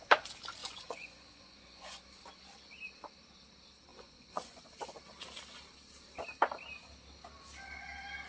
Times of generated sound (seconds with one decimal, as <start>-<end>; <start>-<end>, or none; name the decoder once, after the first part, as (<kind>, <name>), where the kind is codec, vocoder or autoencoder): 0.6-2.0 (vocoder, Vocos); 3.9-4.6